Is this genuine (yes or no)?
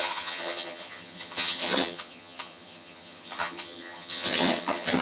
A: no